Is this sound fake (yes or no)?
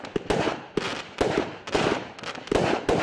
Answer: no